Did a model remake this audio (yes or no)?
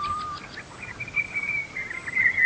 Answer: no